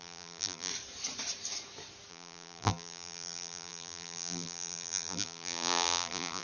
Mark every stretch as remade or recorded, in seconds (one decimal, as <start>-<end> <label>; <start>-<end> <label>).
0.0-0.7 remade; 0.7-2.1 recorded; 2.1-6.4 remade